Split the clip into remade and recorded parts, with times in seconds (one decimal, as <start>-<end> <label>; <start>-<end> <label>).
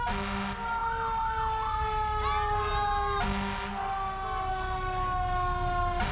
0.0-6.1 recorded